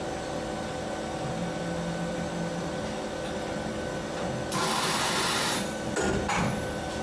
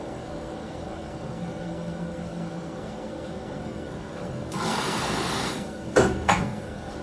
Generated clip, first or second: second